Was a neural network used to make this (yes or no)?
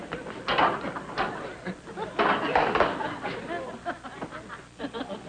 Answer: no